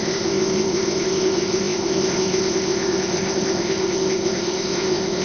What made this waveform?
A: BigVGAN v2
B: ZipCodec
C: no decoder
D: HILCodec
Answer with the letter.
B